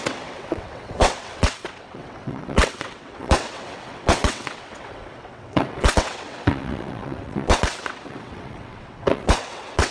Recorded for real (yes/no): no